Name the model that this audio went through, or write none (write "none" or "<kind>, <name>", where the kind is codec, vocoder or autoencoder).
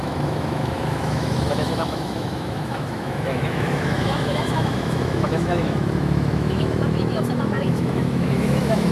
autoencoder, DAC-VAE